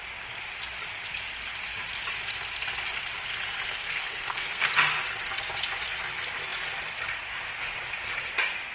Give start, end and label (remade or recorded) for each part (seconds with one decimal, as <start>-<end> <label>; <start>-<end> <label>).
0.0-3.7 recorded; 3.7-4.7 remade; 4.7-8.7 recorded